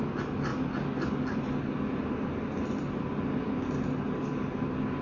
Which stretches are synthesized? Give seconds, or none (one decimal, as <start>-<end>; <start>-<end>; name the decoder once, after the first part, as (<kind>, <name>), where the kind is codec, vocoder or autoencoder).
none

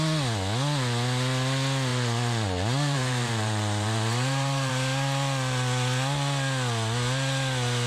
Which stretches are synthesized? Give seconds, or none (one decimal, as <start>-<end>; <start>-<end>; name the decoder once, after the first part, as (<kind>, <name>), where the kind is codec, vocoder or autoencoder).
1.9-4.7 (vocoder, BigVGAN v2)

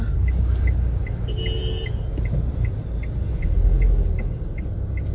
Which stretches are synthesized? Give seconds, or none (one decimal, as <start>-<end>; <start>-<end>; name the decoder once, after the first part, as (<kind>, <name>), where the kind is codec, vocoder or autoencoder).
1.6-2.8 (vocoder, BigVGAN v2)

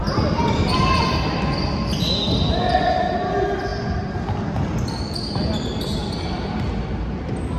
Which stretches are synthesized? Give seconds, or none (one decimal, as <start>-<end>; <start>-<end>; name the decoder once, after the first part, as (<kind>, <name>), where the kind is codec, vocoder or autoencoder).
none

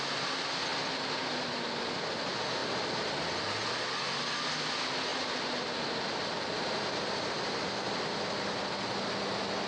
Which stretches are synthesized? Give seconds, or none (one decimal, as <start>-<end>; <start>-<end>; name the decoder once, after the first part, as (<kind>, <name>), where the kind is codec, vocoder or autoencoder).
none